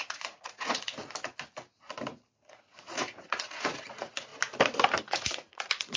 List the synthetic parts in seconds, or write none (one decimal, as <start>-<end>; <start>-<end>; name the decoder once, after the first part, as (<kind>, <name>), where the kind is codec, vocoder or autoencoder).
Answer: 0.0-1.0 (vocoder, Vocos); 2.5-4.3; 5.0-6.0